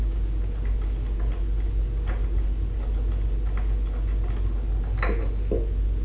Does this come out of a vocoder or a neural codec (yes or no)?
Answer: no